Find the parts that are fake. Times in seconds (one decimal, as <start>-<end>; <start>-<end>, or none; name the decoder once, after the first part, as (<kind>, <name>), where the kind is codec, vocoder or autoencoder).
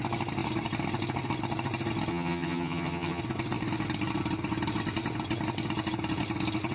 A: 2.1-3.2 (vocoder, HiFi-GAN)